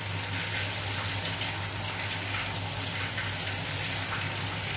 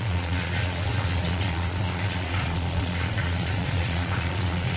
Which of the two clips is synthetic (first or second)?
second